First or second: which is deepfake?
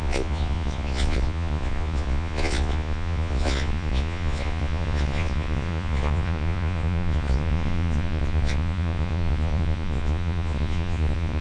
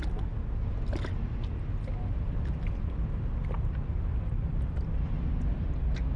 first